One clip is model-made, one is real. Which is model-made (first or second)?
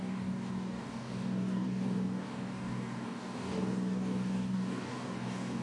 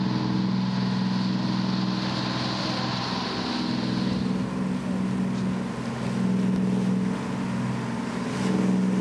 first